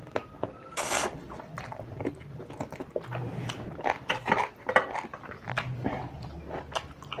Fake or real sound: real